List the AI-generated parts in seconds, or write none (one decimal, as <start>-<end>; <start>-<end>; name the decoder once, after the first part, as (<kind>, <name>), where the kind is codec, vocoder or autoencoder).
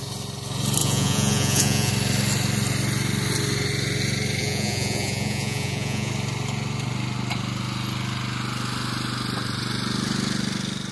0.8-1.9 (vocoder, Vocos); 4.4-6.1